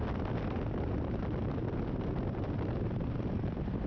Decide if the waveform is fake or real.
fake